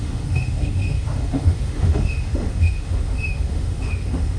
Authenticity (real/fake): fake